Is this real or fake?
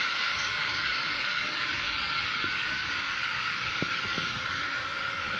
fake